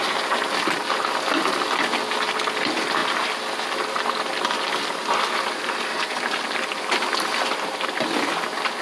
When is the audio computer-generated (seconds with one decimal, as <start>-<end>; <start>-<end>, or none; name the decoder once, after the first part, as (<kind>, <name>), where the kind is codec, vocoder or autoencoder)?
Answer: none